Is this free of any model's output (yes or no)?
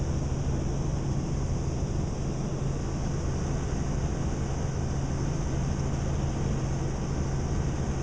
yes